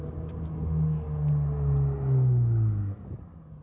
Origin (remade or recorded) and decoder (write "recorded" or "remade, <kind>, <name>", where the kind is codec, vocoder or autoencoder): recorded